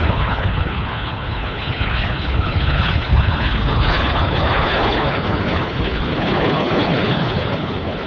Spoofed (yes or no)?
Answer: yes